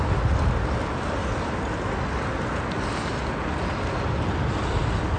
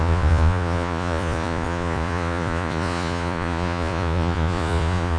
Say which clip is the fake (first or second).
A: second